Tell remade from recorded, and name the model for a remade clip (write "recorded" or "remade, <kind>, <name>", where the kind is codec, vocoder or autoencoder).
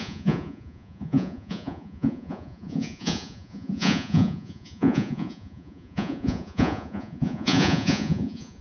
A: remade, vocoder, Vocos